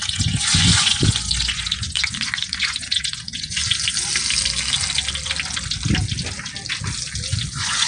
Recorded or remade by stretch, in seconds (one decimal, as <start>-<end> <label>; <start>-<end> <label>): 0.0-3.6 remade; 3.6-7.5 recorded; 7.5-7.9 remade